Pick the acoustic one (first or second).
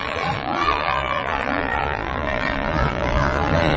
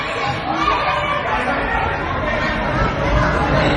second